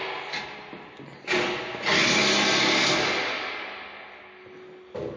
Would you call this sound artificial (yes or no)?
no